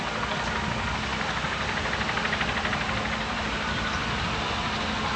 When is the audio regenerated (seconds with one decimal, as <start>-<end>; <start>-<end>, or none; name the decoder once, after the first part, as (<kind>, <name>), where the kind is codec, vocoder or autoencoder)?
none